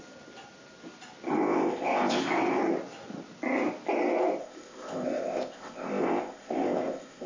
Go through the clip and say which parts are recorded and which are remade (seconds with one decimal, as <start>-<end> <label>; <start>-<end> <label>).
0.0-1.3 recorded; 1.3-2.2 remade; 2.2-4.4 recorded; 4.4-7.3 remade